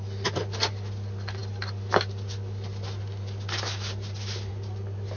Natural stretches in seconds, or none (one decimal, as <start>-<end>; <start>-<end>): 0.0-5.2